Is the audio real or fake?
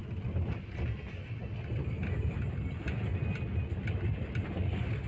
real